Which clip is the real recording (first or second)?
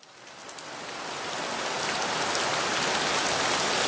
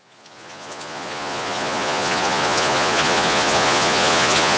first